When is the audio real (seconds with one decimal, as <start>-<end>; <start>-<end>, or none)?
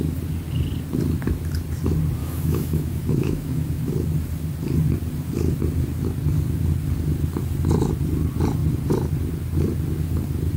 0.0-2.2; 3.9-10.6